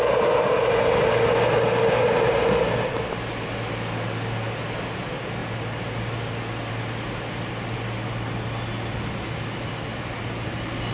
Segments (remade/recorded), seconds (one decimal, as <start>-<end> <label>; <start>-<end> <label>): 0.0-10.9 recorded